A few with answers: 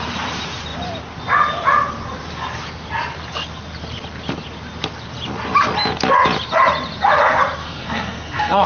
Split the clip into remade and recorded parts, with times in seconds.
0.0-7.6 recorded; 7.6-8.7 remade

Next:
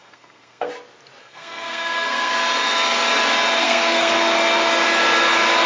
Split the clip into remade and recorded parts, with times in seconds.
0.0-0.7 remade; 0.7-1.2 recorded; 1.2-2.3 remade; 2.3-3.6 recorded; 3.6-4.1 remade; 4.1-5.7 recorded

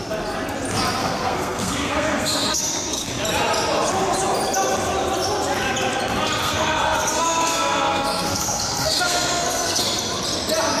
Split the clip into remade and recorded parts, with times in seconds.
0.0-1.0 recorded; 1.0-3.1 remade; 3.1-6.4 recorded; 6.4-9.8 remade; 9.8-10.8 recorded

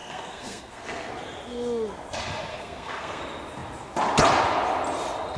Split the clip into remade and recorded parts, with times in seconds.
0.0-1.1 remade; 1.1-2.5 recorded; 2.5-3.2 remade; 3.2-5.4 recorded

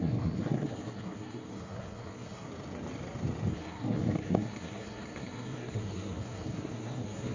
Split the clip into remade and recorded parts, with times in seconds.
0.0-2.5 remade; 2.5-3.5 recorded; 3.5-7.3 remade

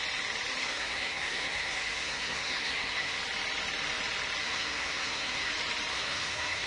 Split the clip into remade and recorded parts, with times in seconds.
0.0-0.6 recorded; 0.6-3.2 remade; 3.2-4.4 recorded; 4.4-5.5 remade; 5.5-5.9 recorded; 5.9-6.7 remade